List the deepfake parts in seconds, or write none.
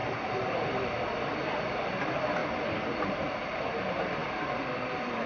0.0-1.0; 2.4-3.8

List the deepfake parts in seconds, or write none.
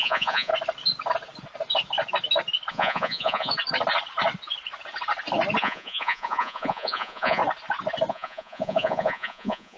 0.0-0.5; 2.7-3.5; 5.6-7.4; 8.1-9.8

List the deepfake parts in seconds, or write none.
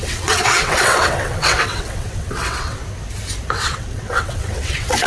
0.0-2.8; 3.6-5.1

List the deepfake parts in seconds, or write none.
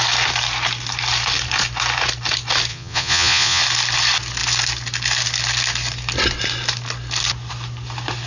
2.7-3.6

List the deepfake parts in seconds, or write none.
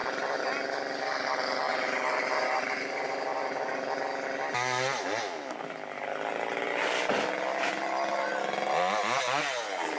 0.0-0.5; 1.7-4.0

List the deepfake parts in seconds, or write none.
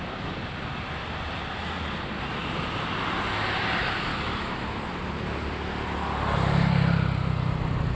4.1-5.0